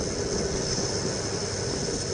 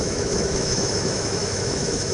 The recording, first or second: first